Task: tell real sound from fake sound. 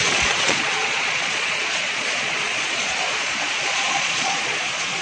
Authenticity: fake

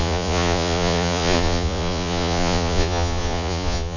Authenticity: fake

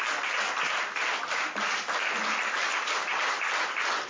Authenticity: real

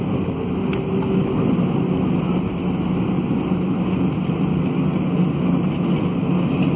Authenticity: real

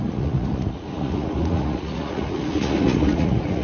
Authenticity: fake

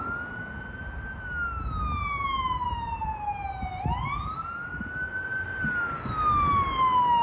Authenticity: real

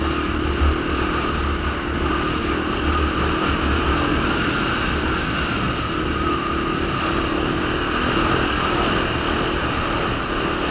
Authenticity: real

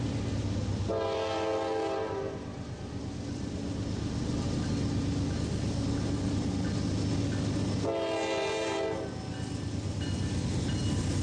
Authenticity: real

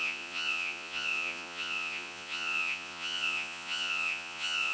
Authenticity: fake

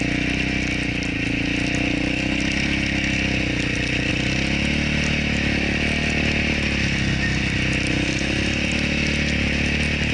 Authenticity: real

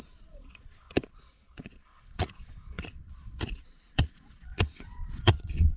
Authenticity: fake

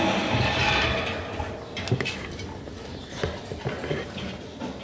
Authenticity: real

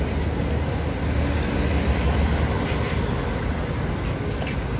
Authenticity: real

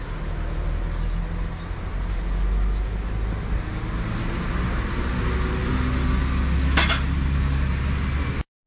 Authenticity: real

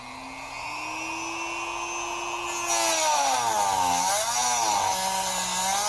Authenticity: real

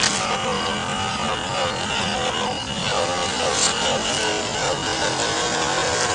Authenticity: real